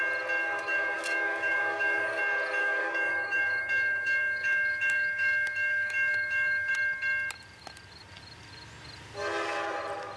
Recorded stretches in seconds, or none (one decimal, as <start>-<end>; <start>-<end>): 0.0-0.4; 2.2-2.6; 6.7-10.2